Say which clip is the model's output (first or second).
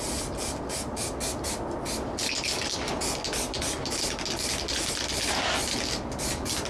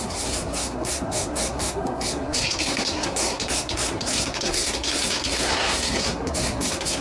second